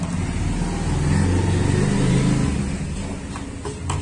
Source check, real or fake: real